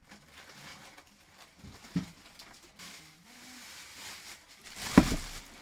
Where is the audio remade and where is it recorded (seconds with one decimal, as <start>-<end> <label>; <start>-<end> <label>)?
0.0-0.7 recorded; 0.7-2.9 remade; 2.9-3.9 recorded; 3.9-5.0 remade; 5.0-5.6 recorded